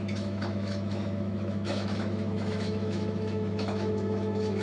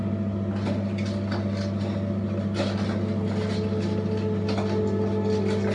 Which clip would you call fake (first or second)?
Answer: first